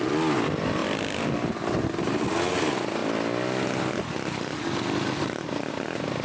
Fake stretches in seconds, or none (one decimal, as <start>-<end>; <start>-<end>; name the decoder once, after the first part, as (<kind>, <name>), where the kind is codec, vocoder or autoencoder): none